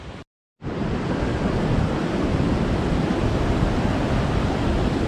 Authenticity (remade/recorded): recorded